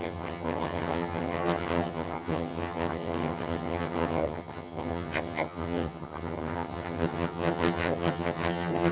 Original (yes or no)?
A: no